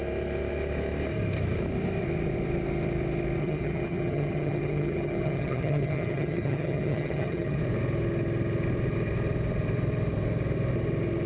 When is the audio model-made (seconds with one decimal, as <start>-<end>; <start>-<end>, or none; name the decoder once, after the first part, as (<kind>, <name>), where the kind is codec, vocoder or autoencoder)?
3.4-7.6 (vocoder, HiFi-GAN)